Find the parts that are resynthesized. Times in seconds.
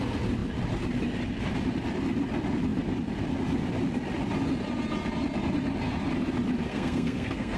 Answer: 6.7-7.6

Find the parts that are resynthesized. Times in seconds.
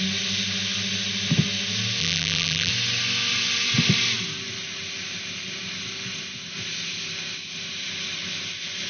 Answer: 2.0-2.7